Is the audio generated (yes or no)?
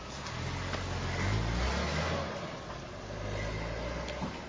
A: no